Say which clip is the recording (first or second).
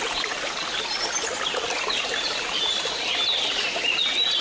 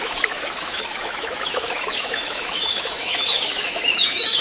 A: first